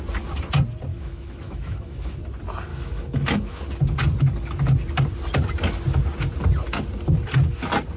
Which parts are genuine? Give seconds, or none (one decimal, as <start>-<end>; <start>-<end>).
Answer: 0.0-0.9; 2.2-2.7; 3.6-8.0